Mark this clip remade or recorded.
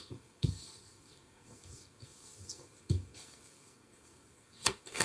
remade